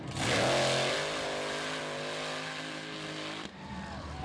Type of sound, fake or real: real